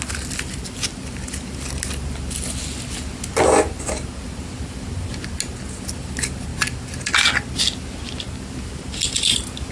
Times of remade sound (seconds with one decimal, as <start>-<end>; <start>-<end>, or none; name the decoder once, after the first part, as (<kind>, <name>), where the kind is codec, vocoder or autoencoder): none